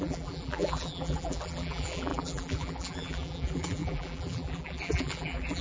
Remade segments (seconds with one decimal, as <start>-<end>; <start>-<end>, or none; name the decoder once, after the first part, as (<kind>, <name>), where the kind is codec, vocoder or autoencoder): 0.0-5.6 (vocoder, BigVGAN v2)